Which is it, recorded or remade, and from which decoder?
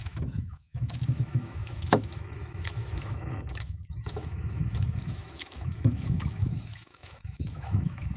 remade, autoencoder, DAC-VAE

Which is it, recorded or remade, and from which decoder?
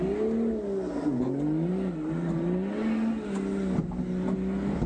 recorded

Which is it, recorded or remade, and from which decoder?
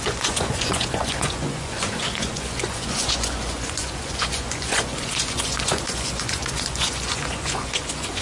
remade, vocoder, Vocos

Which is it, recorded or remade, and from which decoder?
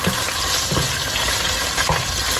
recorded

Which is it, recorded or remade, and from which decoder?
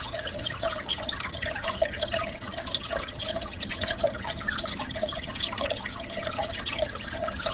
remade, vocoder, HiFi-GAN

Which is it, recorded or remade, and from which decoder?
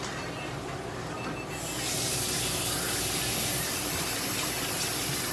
remade, vocoder, BigVGAN v2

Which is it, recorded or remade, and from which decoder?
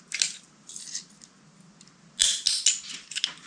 recorded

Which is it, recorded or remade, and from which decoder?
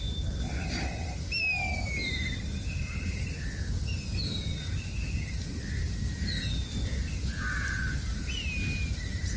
recorded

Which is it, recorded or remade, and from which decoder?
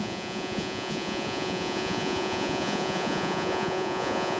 remade, vocoder, Vocos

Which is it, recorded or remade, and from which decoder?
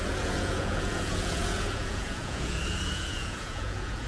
remade, vocoder, Vocos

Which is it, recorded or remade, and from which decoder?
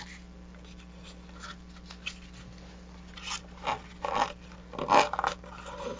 recorded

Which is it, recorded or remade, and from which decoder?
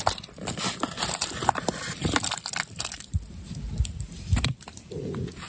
recorded